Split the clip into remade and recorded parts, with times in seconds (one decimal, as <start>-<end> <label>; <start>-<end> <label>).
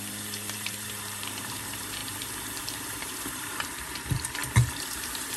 0.0-4.4 remade; 4.4-4.9 recorded; 4.9-5.4 remade